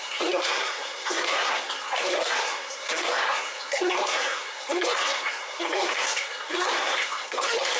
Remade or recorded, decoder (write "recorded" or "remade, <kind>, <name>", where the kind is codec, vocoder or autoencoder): remade, codec, SNAC